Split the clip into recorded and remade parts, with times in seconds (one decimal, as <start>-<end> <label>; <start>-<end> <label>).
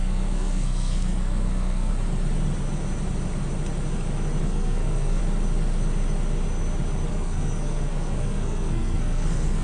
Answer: 0.0-1.9 remade; 1.9-4.4 recorded; 4.4-5.2 remade; 5.2-7.1 recorded; 7.1-9.6 remade